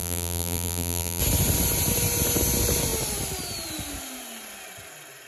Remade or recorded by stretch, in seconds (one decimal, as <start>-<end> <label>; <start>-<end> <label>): 0.0-1.2 remade; 1.2-5.3 recorded

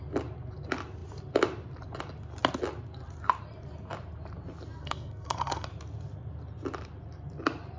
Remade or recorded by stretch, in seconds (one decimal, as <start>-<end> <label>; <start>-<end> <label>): 0.0-4.8 recorded; 4.8-5.7 remade; 5.7-7.8 recorded

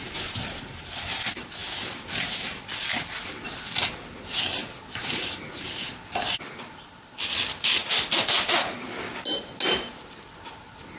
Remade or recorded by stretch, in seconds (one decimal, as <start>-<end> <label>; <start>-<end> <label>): 0.0-11.0 recorded

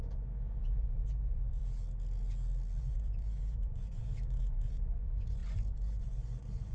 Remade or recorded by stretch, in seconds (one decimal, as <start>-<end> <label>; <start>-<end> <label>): 0.0-1.6 remade; 1.6-2.8 recorded; 2.8-6.7 remade

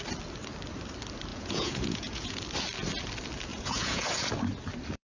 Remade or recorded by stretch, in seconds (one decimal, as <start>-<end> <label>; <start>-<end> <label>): 0.0-1.3 recorded; 1.3-2.4 remade; 2.4-3.5 recorded; 3.5-4.1 remade; 4.1-5.0 recorded

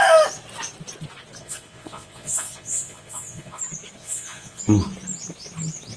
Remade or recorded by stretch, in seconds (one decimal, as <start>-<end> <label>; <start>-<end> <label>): 0.0-1.4 recorded; 1.4-3.6 remade; 3.6-4.0 recorded; 4.0-4.6 remade; 4.6-6.0 recorded

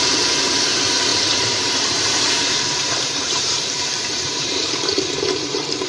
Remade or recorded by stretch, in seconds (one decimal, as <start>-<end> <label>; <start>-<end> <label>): 0.0-1.1 recorded; 1.1-4.6 remade; 4.6-5.9 recorded

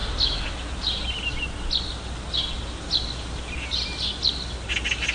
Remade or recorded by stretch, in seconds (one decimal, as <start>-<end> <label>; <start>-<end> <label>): 0.0-5.1 recorded